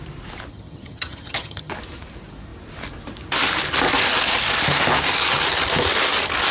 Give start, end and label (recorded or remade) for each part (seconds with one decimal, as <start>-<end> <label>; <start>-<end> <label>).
0.0-0.5 recorded; 0.5-1.7 remade; 1.7-6.5 recorded